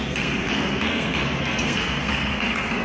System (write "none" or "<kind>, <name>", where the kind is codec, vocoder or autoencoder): codec, SNAC